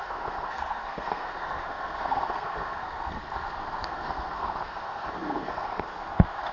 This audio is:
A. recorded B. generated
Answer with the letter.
B